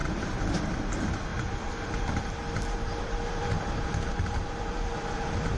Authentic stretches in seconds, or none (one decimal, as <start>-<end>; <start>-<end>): 0.7-1.3; 2.0-2.8

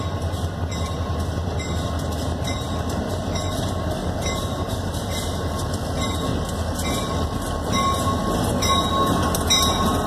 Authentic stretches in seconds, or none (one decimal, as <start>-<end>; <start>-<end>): 0.0-4.0; 5.1-10.1

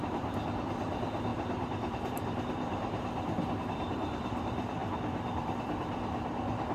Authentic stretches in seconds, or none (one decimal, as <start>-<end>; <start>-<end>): none